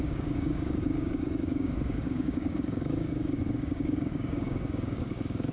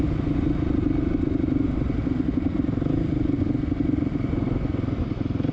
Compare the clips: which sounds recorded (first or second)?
second